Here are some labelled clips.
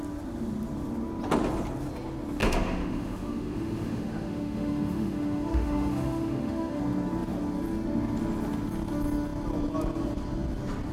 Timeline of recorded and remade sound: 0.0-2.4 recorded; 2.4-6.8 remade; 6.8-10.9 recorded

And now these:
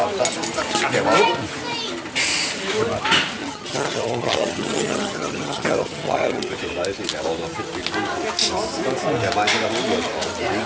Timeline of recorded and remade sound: 0.0-3.4 recorded; 3.4-6.5 remade; 6.5-10.7 recorded

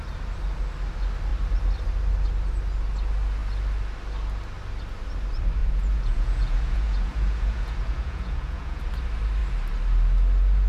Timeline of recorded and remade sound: 0.0-5.6 recorded; 5.6-8.8 remade; 8.8-10.7 recorded

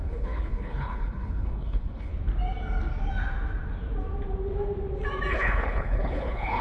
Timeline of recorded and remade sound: 0.0-2.1 remade; 2.1-5.3 recorded; 5.3-6.6 remade

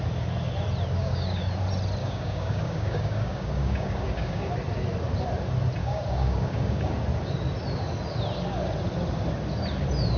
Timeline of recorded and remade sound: 0.0-1.0 recorded; 1.0-1.5 remade; 1.5-2.0 recorded; 2.0-4.5 remade; 4.5-5.8 recorded; 5.8-6.9 remade; 6.9-10.2 recorded

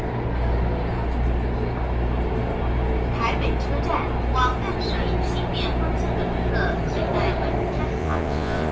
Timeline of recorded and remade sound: 0.0-8.0 recorded; 8.0-8.7 remade

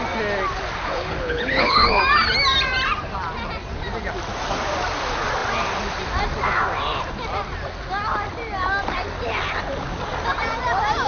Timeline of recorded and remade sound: 0.0-0.9 recorded; 0.9-2.0 remade; 2.0-11.1 recorded

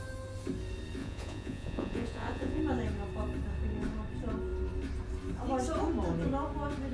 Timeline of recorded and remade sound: 0.0-1.0 recorded; 1.0-2.6 remade; 2.6-6.9 recorded